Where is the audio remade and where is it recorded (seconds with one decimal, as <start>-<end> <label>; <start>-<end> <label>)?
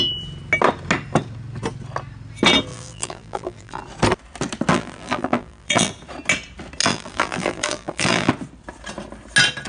0.0-2.7 recorded; 2.7-3.8 remade; 3.8-4.7 recorded; 4.7-5.9 remade; 5.9-6.8 recorded; 6.8-8.3 remade; 8.3-9.7 recorded